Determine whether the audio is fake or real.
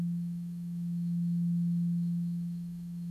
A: fake